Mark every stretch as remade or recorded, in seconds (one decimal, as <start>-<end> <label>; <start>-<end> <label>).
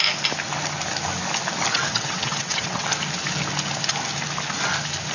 0.0-1.7 recorded; 1.7-2.9 remade; 2.9-5.1 recorded